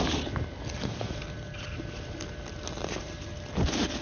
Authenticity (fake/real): real